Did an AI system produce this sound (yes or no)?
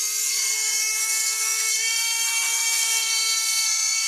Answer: yes